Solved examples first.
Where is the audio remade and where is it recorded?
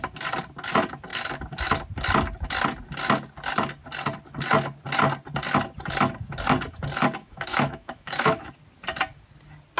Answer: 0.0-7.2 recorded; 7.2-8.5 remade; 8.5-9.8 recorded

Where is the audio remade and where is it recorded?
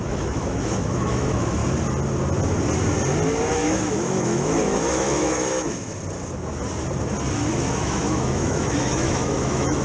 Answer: 0.0-1.6 remade; 1.6-3.5 recorded; 3.5-5.8 remade; 5.8-7.3 recorded; 7.3-9.8 remade